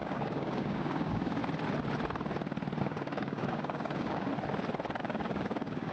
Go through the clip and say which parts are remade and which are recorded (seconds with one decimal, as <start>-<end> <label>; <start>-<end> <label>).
0.0-1.4 remade; 1.4-2.8 recorded; 2.8-4.3 remade; 4.3-5.0 recorded; 5.0-5.9 remade